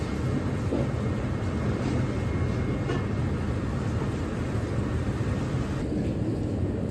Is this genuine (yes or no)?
yes